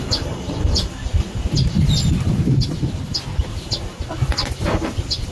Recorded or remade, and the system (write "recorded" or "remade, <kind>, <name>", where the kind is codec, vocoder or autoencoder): recorded